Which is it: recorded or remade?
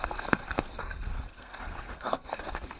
remade